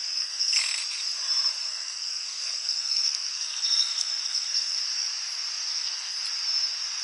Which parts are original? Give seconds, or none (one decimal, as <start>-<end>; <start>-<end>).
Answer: 0.8-1.6; 4.8-5.7; 6.2-7.0